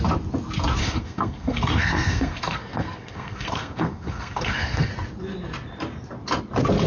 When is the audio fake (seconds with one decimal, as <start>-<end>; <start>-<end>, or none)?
0.8-4.9